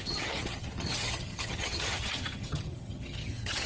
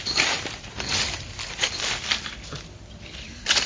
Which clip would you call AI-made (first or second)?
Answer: first